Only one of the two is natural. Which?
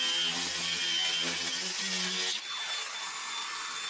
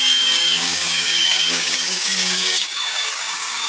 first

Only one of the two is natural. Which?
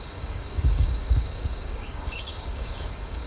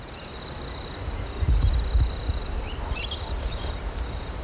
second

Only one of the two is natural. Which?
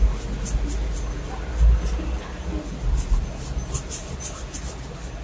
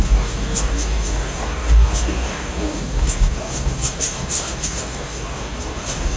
first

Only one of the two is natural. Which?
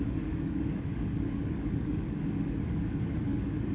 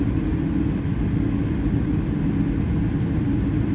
second